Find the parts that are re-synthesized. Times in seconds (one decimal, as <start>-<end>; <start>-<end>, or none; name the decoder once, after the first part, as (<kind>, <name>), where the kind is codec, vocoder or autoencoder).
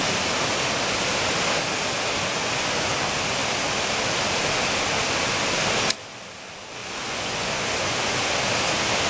2.3-2.9 (vocoder, Vocos); 6.8-8.3